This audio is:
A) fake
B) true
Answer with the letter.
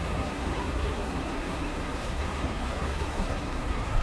A